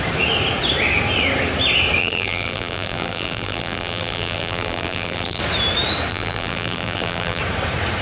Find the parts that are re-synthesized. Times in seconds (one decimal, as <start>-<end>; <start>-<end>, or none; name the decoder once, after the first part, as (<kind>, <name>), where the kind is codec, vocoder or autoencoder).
2.0-5.4 (vocoder, BigVGAN v2); 6.1-7.4